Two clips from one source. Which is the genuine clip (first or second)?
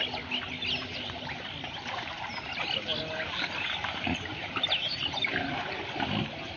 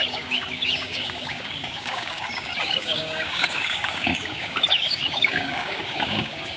first